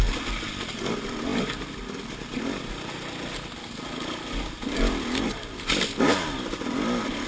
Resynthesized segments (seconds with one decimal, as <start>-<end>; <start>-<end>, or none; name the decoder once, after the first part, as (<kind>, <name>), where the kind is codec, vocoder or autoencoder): 1.3-5.7 (vocoder, BigVGAN v2)

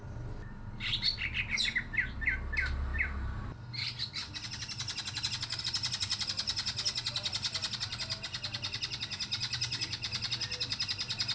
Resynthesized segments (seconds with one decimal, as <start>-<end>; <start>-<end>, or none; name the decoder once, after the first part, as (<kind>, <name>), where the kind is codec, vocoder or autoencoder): none

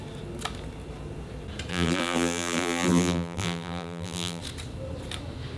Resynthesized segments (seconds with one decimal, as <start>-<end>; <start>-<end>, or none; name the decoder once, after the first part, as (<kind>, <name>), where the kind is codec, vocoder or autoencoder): 1.7-4.4 (vocoder, BigVGAN v2)

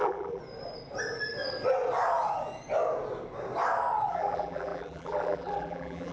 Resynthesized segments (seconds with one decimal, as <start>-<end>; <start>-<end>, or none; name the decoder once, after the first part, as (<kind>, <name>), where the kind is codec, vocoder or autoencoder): 0.0-0.4 (vocoder, BigVGAN v2); 4.1-6.1

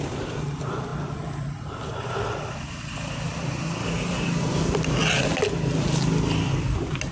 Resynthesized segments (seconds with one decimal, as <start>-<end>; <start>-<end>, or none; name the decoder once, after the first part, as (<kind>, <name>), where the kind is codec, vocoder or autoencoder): 0.0-0.9 (vocoder, BigVGAN v2); 1.4-3.3

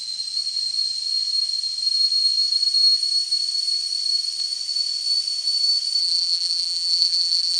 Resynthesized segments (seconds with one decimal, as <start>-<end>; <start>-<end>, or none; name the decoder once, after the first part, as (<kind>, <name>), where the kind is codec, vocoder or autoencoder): 6.0-7.6 (vocoder, BigVGAN v2)

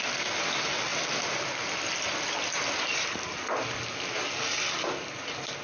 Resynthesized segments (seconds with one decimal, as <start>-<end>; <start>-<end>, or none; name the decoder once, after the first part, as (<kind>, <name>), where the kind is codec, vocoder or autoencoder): none

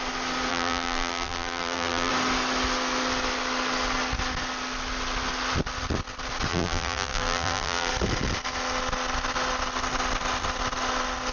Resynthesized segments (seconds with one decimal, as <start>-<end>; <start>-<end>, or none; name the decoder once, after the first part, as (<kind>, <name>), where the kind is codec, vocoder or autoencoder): 0.5-2.1 (vocoder, BigVGAN v2); 6.5-7.9